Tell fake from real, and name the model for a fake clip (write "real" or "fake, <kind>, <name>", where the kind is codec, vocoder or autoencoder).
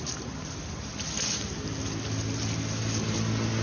real